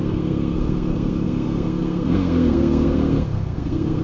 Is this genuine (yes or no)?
no